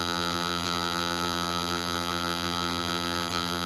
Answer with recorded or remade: remade